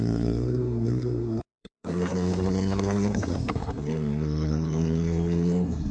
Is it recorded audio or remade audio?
remade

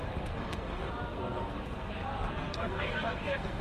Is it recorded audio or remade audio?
remade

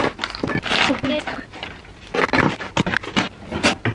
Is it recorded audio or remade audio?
recorded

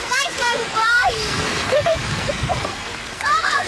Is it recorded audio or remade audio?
remade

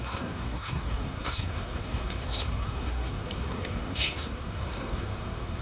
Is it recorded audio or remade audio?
remade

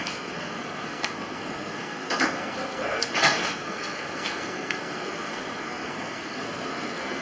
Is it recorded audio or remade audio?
remade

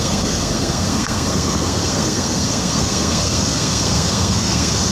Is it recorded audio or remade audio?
remade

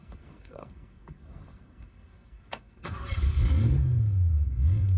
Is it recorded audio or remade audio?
remade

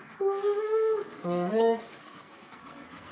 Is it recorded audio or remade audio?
remade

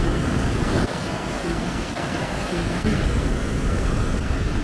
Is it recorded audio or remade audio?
remade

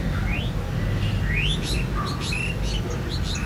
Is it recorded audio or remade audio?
recorded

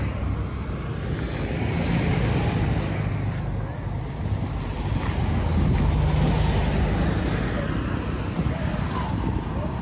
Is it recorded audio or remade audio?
recorded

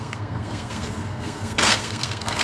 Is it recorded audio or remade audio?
remade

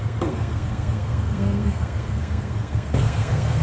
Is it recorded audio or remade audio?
remade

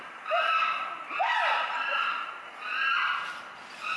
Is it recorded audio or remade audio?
recorded